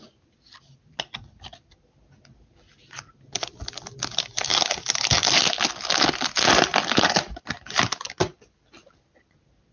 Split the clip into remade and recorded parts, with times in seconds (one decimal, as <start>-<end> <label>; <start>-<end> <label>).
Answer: 0.0-9.7 recorded